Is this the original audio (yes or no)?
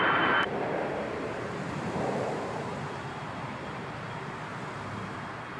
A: no